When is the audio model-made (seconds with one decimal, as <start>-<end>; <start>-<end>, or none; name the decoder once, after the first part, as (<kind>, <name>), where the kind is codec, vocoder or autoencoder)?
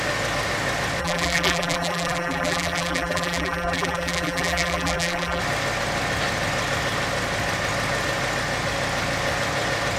1.0-5.4 (vocoder, BigVGAN v2)